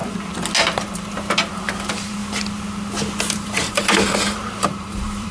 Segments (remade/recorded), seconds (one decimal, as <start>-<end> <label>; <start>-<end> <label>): 0.0-1.5 recorded; 1.5-2.2 remade; 2.2-3.3 recorded; 3.3-5.3 remade